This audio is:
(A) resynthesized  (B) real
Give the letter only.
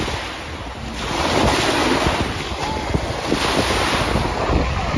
B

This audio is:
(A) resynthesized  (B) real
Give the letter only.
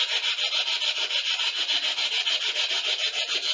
B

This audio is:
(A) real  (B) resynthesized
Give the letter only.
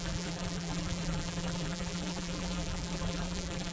B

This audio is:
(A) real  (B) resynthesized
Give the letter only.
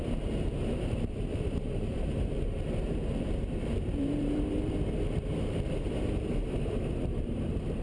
B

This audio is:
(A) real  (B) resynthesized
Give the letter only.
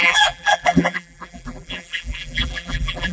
B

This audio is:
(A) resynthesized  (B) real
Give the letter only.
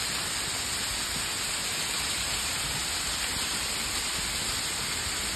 B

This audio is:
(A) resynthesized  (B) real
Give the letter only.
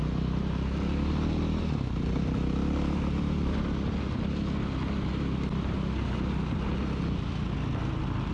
B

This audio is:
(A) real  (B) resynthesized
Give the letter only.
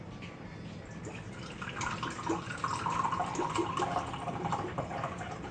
A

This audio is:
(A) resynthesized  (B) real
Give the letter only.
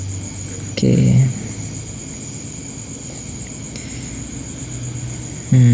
B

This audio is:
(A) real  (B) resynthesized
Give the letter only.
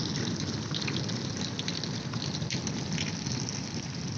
A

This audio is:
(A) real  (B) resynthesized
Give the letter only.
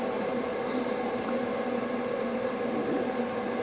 B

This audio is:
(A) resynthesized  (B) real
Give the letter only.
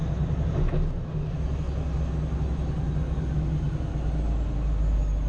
B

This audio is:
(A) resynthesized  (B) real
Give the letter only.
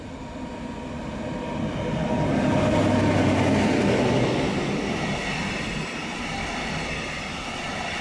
B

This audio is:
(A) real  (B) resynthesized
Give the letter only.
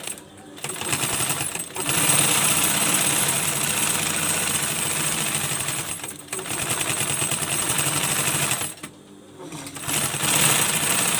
B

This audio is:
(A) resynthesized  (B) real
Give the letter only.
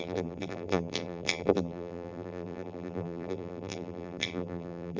A